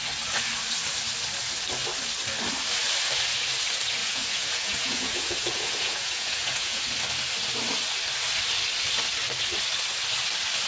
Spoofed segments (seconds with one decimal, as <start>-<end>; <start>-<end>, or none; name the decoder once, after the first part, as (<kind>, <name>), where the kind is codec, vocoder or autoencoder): 4.0-6.8 (vocoder, Vocos)